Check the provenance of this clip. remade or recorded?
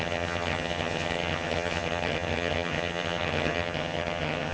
remade